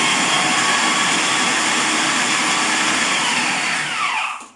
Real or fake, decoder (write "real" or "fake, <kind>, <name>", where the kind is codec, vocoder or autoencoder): real